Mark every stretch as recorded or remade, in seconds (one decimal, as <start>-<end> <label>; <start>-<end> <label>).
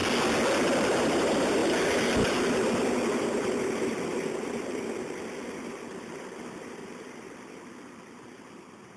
0.0-1.0 recorded; 1.0-1.6 remade; 1.6-2.1 recorded; 2.1-9.0 remade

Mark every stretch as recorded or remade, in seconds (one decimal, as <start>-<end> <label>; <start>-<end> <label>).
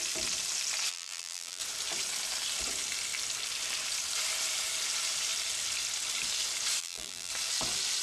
0.0-0.9 recorded; 0.9-1.6 remade; 1.6-6.8 recorded; 6.8-7.3 remade; 7.3-8.0 recorded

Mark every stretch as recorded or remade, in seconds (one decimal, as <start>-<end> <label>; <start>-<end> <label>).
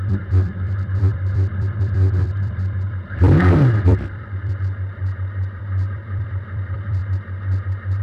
0.0-5.0 remade; 5.0-5.6 recorded; 5.6-7.0 remade; 7.0-8.0 recorded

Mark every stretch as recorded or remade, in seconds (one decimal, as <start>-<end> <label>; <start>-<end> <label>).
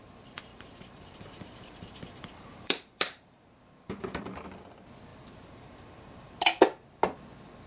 0.0-0.5 recorded; 0.5-4.2 remade; 4.2-5.1 recorded; 5.1-6.6 remade; 6.6-7.7 recorded